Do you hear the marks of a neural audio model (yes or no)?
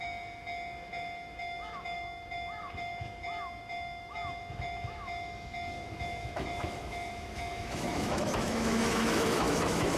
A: yes